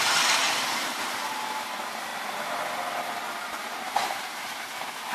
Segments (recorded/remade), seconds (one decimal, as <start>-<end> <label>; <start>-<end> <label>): 0.0-2.1 remade; 2.1-3.4 recorded; 3.4-5.1 remade